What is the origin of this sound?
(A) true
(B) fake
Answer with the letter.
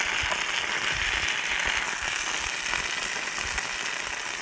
A